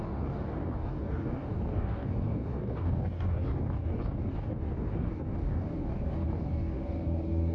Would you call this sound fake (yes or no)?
yes